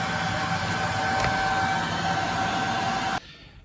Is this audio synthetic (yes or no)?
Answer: no